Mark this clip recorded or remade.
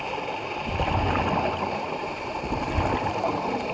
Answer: recorded